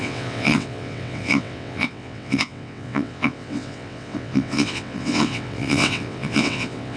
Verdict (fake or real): fake